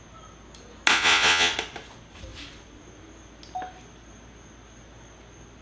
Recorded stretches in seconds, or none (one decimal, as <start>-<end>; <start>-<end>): 0.0-0.9; 1.5-5.6